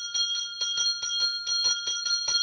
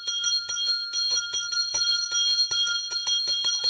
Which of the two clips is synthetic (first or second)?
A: second